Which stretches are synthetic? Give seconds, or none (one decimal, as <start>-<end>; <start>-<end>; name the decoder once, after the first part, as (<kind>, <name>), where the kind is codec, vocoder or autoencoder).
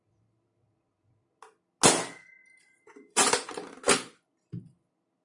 2.4-4.6 (vocoder, BigVGAN v2)